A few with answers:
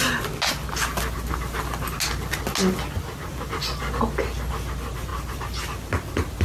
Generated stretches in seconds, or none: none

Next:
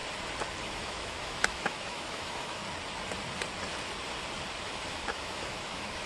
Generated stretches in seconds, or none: 0.6-2.6 (autoencoder, DAC-VAE); 4.6-6.1

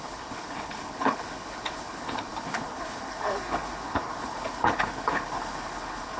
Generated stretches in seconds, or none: 0.0-6.2 (codec, HILCodec)

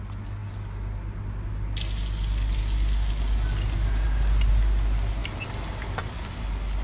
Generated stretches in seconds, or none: none

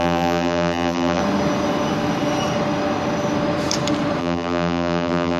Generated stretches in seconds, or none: 0.0-1.2 (vocoder, BigVGAN v2); 4.2-5.4

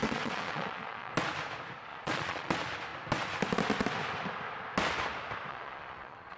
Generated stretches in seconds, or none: 0.0-1.1 (vocoder, Vocos); 1.9-2.5; 5.5-6.4

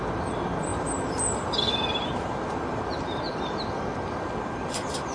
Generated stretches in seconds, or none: 0.7-3.5 (vocoder, BigVGAN v2)